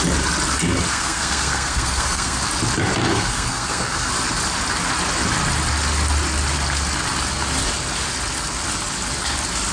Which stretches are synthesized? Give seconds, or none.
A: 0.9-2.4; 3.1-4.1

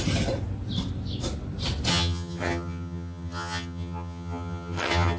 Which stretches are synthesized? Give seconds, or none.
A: 1.9-5.2